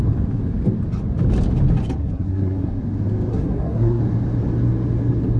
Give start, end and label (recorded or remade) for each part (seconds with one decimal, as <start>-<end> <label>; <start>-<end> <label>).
0.0-2.0 recorded; 2.0-2.8 remade; 2.8-3.3 recorded; 3.3-4.0 remade; 4.0-5.4 recorded